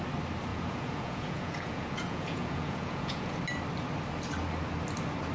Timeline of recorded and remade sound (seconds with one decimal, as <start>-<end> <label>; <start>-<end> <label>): 0.0-0.5 recorded; 0.5-3.4 remade; 3.4-5.3 recorded